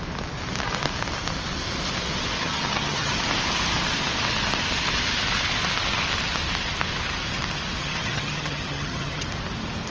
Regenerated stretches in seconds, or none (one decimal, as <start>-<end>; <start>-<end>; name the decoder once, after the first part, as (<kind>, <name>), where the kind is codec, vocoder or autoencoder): 2.4-3.1 (vocoder, HiFi-GAN); 7.8-9.2